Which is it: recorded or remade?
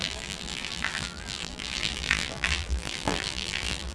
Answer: remade